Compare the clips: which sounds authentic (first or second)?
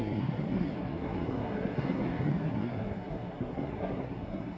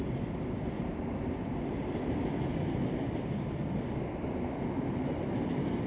second